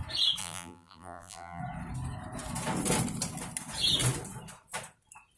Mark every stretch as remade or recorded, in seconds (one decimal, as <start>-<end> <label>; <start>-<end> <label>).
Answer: 0.0-0.4 recorded; 0.4-1.6 remade; 1.6-5.4 recorded